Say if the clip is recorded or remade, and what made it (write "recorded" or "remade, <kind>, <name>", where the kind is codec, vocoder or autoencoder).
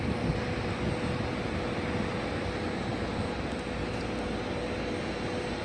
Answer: recorded